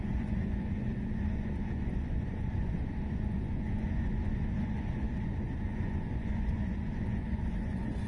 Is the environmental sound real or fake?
fake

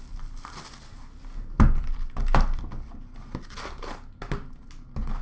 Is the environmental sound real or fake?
real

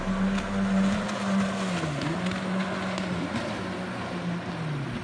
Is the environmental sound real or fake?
real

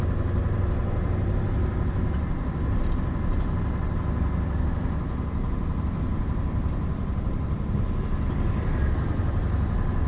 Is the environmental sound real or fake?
real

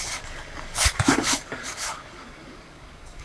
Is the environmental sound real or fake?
fake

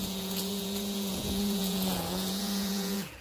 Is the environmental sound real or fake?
fake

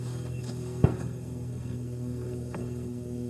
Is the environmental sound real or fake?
fake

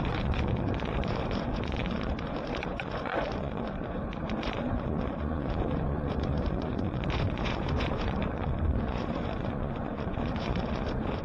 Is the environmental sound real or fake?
fake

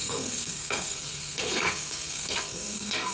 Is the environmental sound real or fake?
fake